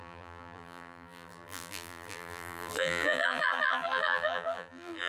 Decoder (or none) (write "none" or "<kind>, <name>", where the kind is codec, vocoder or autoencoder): vocoder, BigVGAN v2